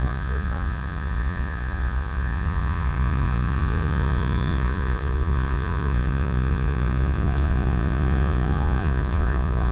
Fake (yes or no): yes